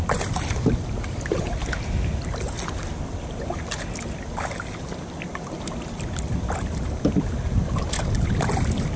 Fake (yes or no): no